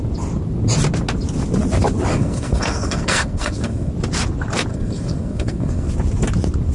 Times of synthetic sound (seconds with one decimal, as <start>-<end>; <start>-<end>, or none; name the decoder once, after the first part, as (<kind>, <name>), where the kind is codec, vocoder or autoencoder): 2.1-3.9 (codec, SNAC); 4.7-5.9